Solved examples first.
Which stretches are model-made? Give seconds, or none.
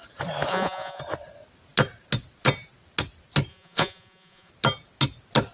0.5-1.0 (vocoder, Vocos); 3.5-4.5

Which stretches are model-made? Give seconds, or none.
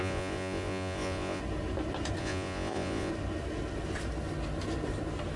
0.0-1.4 (vocoder, Vocos); 2.2-3.1